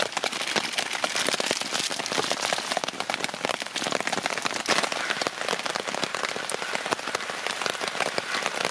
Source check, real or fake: real